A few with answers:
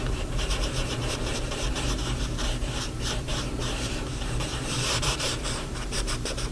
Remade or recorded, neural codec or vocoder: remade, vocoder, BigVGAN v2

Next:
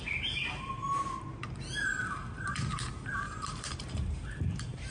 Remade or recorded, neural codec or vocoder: remade, vocoder, BigVGAN v2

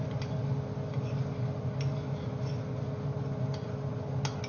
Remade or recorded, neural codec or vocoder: recorded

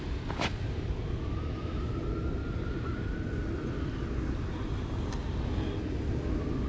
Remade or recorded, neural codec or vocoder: recorded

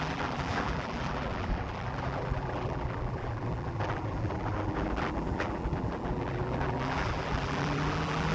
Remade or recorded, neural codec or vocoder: remade, vocoder, BigVGAN v2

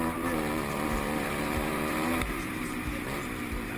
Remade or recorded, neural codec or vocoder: remade, vocoder, BigVGAN v2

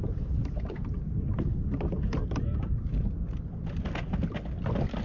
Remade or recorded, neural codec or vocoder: recorded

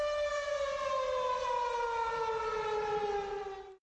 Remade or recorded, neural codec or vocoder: recorded